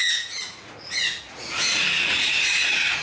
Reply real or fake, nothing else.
fake